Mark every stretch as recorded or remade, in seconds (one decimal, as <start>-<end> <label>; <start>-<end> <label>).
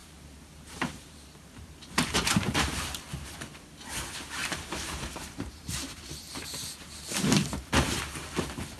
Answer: 0.0-3.4 remade; 3.4-4.4 recorded; 4.4-7.0 remade; 7.0-8.8 recorded